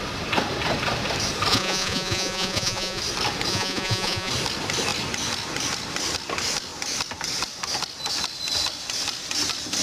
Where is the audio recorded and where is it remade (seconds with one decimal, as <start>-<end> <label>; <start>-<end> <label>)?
0.0-1.5 recorded; 1.5-3.0 remade; 3.0-3.5 recorded; 3.5-4.3 remade; 4.3-9.8 recorded